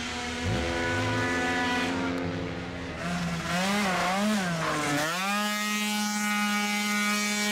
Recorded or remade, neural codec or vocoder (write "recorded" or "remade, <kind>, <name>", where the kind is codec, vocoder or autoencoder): recorded